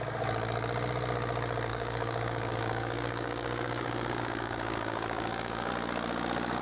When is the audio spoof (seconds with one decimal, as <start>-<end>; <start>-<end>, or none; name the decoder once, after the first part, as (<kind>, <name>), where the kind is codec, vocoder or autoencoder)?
1.7-5.7 (codec, DAC)